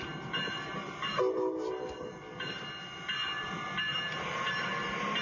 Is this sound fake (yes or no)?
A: no